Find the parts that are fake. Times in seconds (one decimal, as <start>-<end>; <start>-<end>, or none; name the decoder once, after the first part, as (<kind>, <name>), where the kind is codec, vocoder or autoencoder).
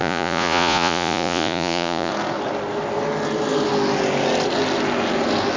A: 0.0-2.1 (vocoder, Vocos)